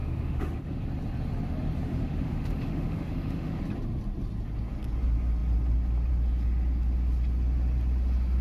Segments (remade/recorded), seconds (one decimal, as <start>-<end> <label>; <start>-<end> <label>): 0.0-0.8 remade; 0.8-1.9 recorded; 1.9-3.6 remade; 3.6-8.4 recorded